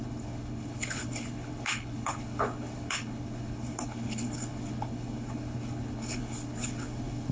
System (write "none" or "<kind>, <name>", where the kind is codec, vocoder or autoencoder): codec, HILCodec